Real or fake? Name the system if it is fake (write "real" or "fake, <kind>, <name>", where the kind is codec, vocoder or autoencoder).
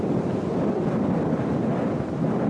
real